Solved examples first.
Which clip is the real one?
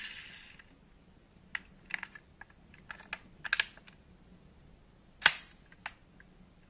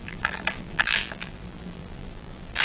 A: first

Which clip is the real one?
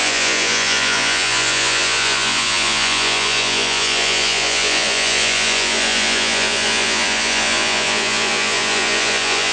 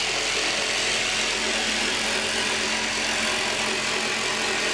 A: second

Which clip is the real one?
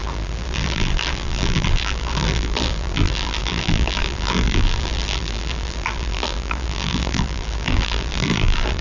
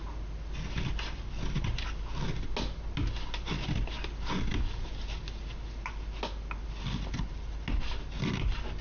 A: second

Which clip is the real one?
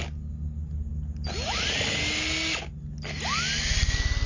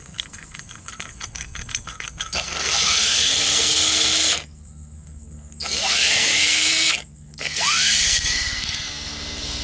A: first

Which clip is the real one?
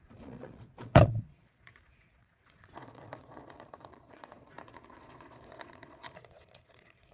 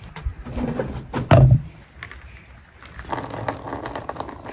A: second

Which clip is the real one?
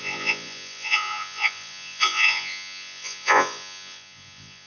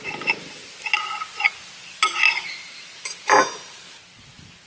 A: second